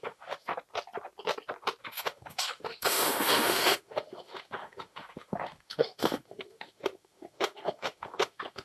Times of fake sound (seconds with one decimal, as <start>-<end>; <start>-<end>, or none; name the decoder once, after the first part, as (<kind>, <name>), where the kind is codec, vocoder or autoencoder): 0.0-0.5 (autoencoder, DAC-VAE); 1.8-8.6